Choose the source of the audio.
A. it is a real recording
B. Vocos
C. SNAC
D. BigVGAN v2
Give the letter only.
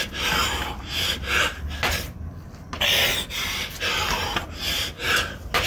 A